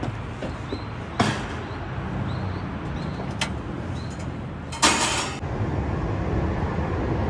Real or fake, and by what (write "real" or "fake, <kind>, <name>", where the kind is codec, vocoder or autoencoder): real